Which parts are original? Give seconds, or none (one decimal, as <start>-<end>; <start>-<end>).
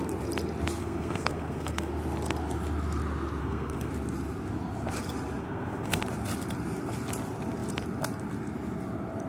0.0-0.8; 1.9-3.4; 3.9-5.4; 6.0-9.3